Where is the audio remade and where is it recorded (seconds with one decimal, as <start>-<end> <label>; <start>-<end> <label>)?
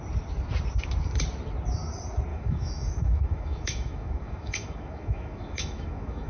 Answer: 0.0-2.3 recorded; 2.3-6.3 remade